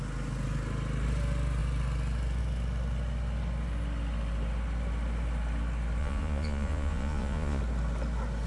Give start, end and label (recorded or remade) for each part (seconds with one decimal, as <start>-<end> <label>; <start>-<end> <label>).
0.0-6.0 recorded; 6.0-7.6 remade; 7.6-8.5 recorded